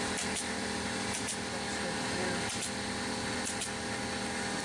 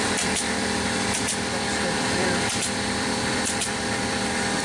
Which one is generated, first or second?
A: second